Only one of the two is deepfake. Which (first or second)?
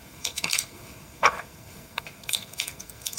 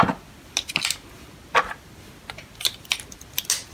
first